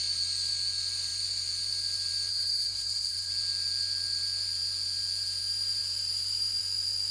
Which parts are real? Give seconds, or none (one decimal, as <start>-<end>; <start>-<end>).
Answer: 0.0-2.3; 3.3-7.1